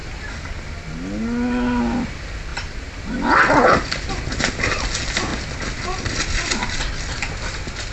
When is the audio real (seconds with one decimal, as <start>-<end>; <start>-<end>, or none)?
0.0-7.9